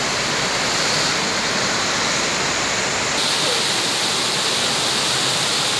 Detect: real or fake real